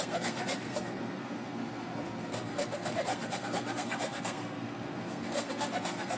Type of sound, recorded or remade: remade